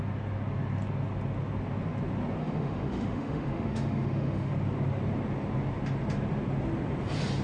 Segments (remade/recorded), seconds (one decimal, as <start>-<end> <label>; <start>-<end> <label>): 0.0-2.4 recorded; 2.4-4.5 remade; 4.5-7.4 recorded